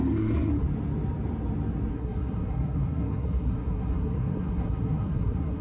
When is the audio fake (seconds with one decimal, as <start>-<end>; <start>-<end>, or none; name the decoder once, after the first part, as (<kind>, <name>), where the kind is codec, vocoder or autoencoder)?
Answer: 0.0-0.5 (codec, SNAC); 1.9-5.6